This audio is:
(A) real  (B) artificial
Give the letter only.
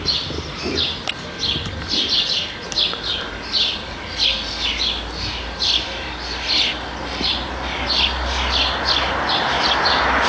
A